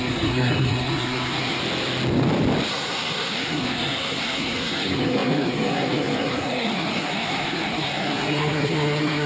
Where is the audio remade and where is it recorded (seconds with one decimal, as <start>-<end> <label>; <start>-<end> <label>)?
0.0-1.6 remade; 1.6-2.7 recorded; 2.7-9.3 remade